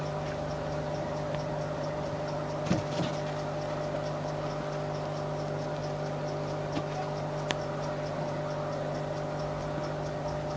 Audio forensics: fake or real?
real